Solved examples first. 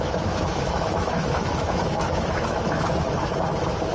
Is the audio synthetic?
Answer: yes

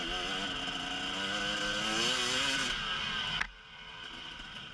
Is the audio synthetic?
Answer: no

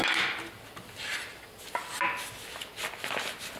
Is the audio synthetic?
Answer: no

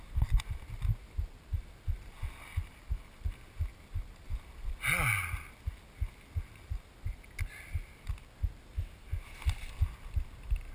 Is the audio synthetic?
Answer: no